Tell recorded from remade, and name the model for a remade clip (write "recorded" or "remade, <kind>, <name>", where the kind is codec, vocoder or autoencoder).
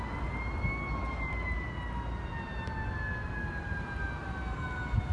recorded